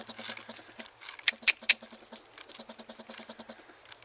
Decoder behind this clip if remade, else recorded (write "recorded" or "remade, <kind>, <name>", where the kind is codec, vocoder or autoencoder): recorded